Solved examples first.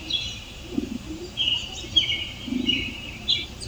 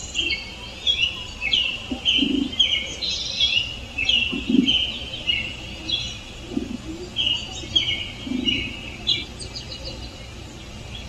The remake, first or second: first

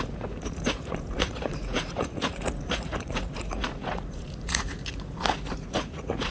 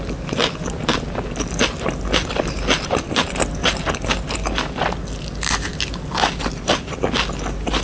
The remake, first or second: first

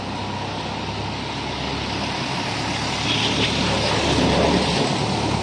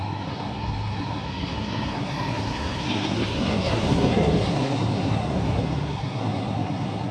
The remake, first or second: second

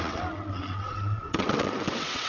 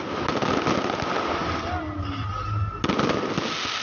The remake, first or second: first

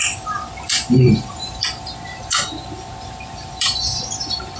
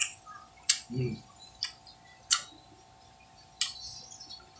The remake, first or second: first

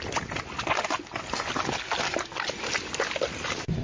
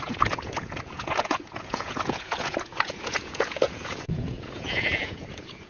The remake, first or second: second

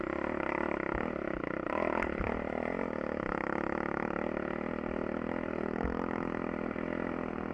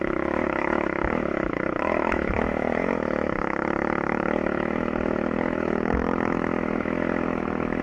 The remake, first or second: second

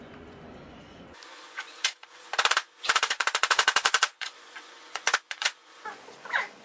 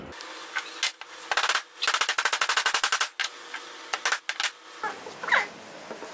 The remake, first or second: first